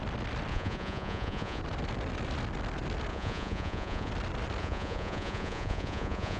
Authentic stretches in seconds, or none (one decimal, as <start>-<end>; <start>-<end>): 0.0-0.5; 1.6-3.1; 4.1-4.6